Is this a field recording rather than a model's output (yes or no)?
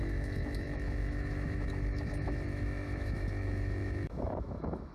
no